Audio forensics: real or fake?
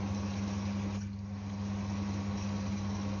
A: real